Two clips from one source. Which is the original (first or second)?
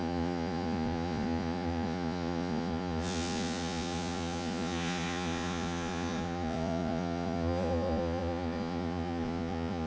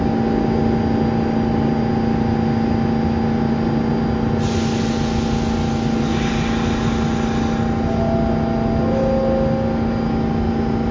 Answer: second